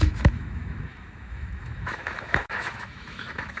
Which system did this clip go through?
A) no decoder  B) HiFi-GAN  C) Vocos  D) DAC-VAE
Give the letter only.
D